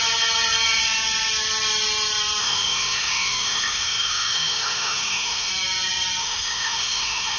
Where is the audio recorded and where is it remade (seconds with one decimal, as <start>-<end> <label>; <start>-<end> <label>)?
0.0-2.4 recorded; 2.4-5.5 remade; 5.5-6.2 recorded; 6.2-7.4 remade